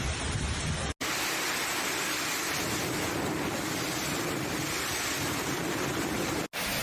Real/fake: real